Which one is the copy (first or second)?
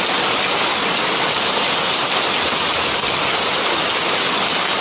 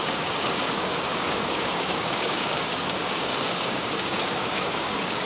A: second